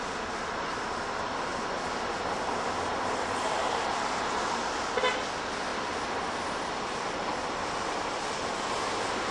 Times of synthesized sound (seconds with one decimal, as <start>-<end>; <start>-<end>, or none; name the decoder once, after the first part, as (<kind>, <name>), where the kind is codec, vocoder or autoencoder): none